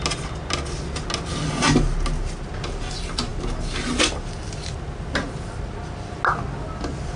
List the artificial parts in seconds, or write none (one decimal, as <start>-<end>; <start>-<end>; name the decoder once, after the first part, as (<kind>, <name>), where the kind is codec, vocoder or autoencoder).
none